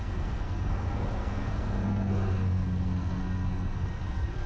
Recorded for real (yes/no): no